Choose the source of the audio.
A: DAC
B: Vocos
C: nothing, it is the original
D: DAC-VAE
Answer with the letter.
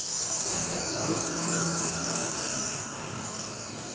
A